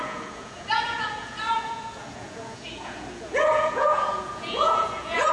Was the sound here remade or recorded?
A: remade